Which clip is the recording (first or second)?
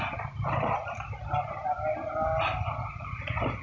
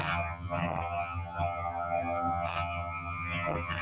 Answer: first